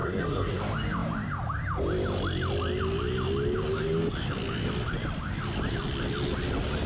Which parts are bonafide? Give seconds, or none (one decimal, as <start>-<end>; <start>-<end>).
0.6-6.9